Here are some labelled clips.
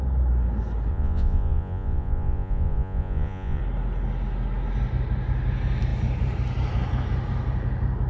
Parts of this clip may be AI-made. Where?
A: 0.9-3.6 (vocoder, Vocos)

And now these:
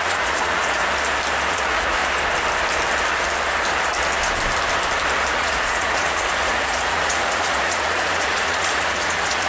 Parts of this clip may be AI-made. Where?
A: 0.0-0.8 (vocoder, Vocos); 1.5-2.0; 5.3-9.5

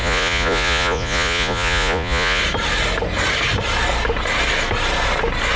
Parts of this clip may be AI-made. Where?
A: 0.0-2.4 (vocoder, Vocos)

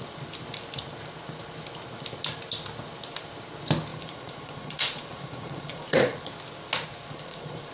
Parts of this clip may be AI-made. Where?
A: 3.9-6.3 (vocoder, Vocos); 7.1-7.7

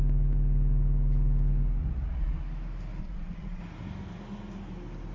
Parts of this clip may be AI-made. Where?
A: 1.8-2.4 (vocoder, Vocos); 3.0-3.6

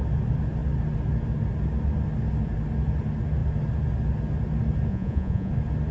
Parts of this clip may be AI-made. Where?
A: 4.9-5.5 (vocoder, Vocos)

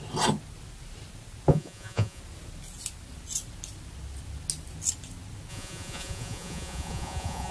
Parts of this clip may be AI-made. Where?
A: 1.5-2.2 (vocoder, Vocos); 5.5-7.5

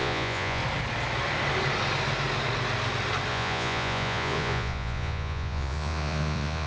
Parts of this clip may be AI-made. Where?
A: 0.0-0.6 (vocoder, Vocos); 3.3-6.7